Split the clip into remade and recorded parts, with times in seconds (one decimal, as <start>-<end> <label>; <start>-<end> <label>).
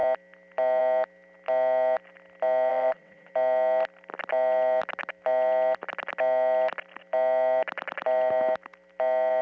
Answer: 0.0-2.7 recorded; 2.7-3.3 remade; 3.3-9.4 recorded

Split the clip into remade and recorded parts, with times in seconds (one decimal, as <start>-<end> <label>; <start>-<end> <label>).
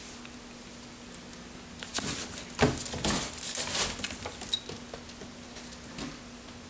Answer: 0.0-6.7 recorded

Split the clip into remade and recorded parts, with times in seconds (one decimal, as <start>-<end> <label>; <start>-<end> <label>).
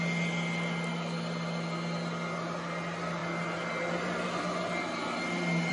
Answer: 0.0-5.7 recorded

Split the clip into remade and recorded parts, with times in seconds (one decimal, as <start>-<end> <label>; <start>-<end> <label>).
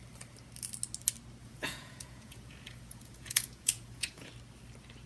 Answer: 0.0-1.4 recorded; 1.4-4.3 remade; 4.3-5.1 recorded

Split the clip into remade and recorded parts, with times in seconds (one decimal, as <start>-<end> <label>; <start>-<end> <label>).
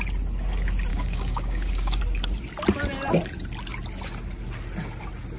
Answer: 0.0-0.9 recorded; 0.9-2.0 remade; 2.0-5.4 recorded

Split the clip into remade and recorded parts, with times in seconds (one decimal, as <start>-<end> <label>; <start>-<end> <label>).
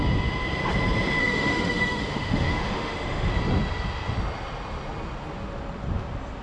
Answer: 0.0-1.2 recorded; 1.2-3.3 remade; 3.3-6.4 recorded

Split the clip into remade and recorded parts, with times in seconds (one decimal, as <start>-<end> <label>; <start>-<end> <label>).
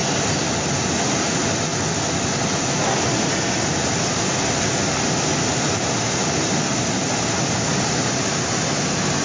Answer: 0.0-9.2 recorded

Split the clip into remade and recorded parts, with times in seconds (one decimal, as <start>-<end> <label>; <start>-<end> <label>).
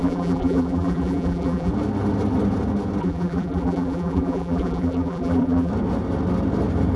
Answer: 0.0-1.7 remade; 1.7-3.0 recorded; 3.0-5.7 remade; 5.7-7.0 recorded